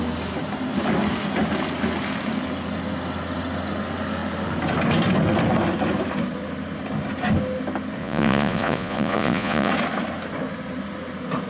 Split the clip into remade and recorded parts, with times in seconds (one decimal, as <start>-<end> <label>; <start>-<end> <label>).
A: 0.0-8.0 recorded; 8.0-9.7 remade; 9.7-11.5 recorded